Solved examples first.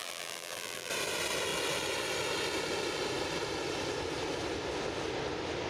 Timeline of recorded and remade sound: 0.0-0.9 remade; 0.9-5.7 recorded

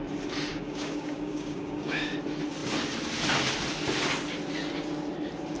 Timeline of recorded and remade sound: 0.0-0.5 recorded; 0.5-2.1 remade; 2.1-5.6 recorded

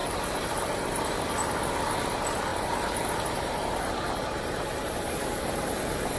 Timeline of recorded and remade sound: 0.0-1.6 remade; 1.6-2.5 recorded; 2.5-5.7 remade; 5.7-6.2 recorded

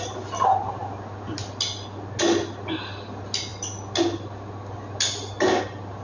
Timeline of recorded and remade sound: 0.0-6.0 recorded

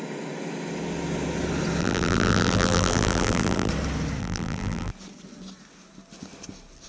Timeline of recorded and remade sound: 0.0-1.8 recorded; 1.8-3.7 remade; 3.7-4.2 recorded; 4.2-4.9 remade; 4.9-6.9 recorded